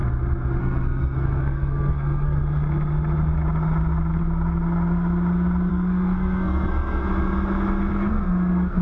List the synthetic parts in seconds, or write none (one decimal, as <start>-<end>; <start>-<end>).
0.6-2.4; 5.7-7.0; 7.9-8.8